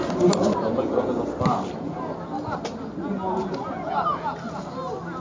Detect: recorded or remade recorded